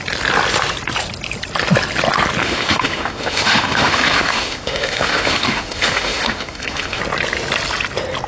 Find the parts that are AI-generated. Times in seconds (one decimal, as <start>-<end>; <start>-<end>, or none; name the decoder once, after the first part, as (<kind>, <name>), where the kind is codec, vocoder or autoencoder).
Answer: 2.4-7.0 (autoencoder, DAC-VAE)